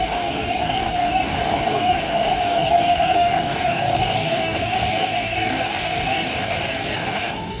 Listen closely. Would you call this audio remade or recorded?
remade